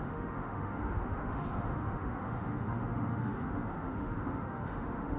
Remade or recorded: remade